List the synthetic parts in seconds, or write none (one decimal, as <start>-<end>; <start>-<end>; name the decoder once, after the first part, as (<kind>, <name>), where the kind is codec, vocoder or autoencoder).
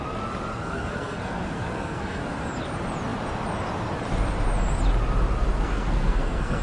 0.5-2.2 (codec, SNAC); 5.5-6.6